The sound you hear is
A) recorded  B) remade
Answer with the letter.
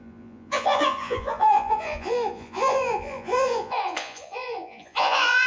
B